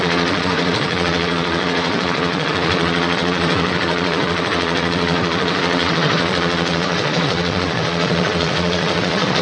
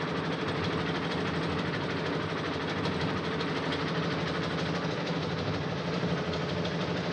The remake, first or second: first